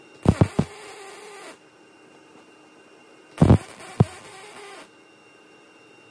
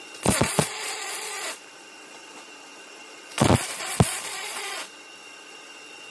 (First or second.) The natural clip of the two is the first